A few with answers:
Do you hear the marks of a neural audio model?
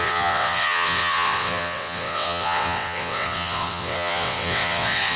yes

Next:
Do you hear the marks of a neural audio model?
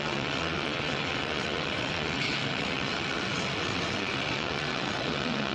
yes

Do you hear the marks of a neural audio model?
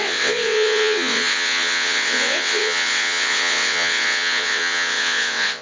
yes